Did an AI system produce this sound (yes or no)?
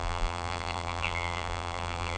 yes